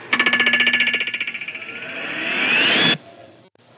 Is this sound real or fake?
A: real